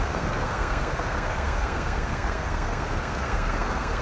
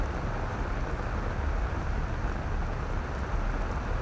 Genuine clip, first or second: second